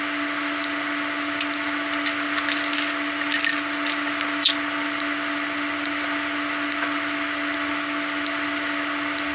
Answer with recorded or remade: recorded